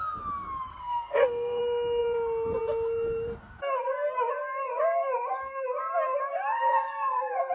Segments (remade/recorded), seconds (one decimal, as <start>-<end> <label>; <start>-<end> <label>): 0.0-0.7 recorded; 0.7-1.6 remade; 1.6-6.3 recorded; 6.3-7.5 remade